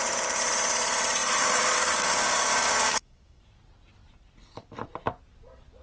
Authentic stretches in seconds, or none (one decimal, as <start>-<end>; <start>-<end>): 0.0-1.4; 3.4-5.8